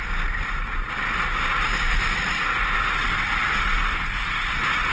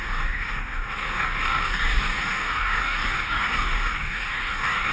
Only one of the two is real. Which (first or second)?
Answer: first